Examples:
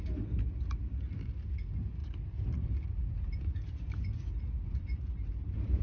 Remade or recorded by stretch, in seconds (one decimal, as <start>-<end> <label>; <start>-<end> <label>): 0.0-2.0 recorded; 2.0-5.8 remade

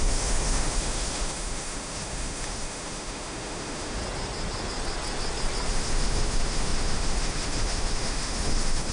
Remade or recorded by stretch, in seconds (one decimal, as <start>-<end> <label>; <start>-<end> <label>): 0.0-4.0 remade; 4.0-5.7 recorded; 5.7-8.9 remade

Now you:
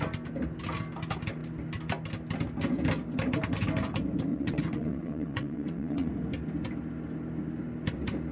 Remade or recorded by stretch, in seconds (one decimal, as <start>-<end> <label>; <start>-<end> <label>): 0.0-4.3 recorded; 4.3-6.1 remade; 6.1-8.3 recorded

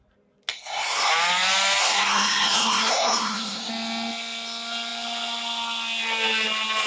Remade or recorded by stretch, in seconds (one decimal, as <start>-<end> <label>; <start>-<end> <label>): 0.0-0.5 recorded; 0.5-1.1 remade; 1.1-1.8 recorded; 1.8-3.7 remade; 3.7-6.9 recorded

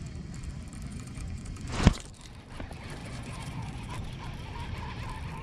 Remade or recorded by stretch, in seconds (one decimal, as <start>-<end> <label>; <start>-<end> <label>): 0.0-0.9 recorded; 0.9-2.0 remade; 2.0-3.0 recorded; 3.0-3.9 remade; 3.9-5.4 recorded

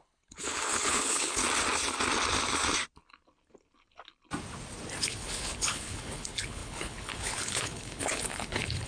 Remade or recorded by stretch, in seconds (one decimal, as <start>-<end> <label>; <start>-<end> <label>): 0.0-1.4 remade; 1.4-5.0 recorded; 5.0-8.9 remade

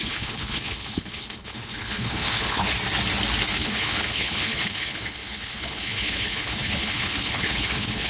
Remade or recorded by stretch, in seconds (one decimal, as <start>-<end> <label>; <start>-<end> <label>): 0.0-2.7 remade; 2.7-3.5 recorded; 3.5-8.1 remade